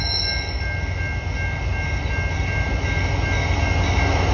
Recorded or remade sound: recorded